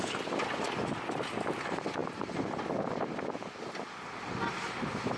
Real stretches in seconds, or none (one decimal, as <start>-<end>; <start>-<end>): 0.0-5.2